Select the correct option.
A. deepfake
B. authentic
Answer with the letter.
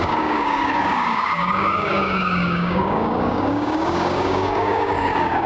A